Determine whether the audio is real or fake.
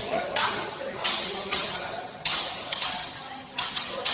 fake